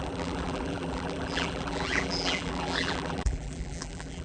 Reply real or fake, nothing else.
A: fake